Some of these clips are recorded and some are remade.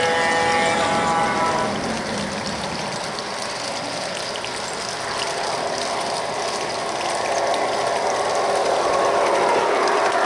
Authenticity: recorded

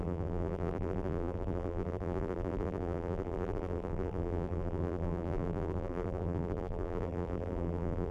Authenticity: remade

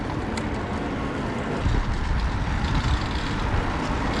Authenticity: recorded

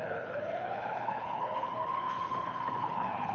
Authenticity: remade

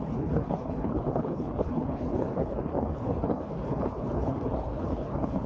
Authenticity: remade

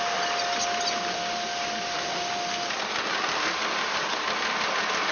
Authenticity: recorded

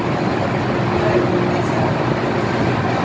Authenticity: recorded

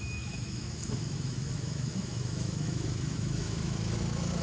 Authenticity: remade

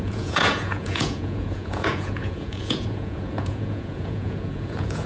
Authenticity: remade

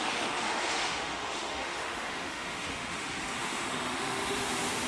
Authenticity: remade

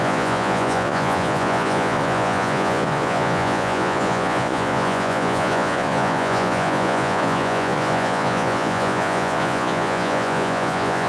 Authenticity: remade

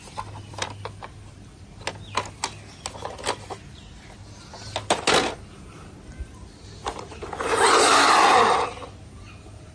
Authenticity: recorded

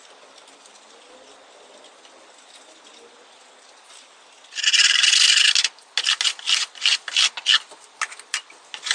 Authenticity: recorded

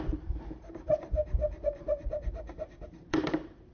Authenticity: remade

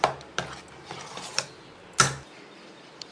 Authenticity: recorded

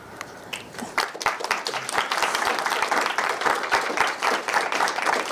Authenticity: remade